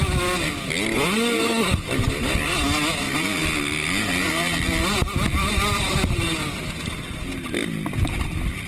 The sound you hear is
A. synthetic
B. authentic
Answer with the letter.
B